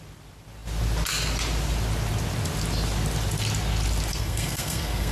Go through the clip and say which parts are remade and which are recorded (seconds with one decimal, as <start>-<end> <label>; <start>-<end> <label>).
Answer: 0.0-4.1 recorded; 4.1-5.1 remade